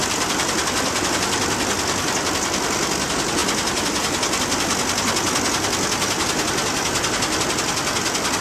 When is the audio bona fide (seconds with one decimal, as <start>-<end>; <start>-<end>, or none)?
1.1-8.4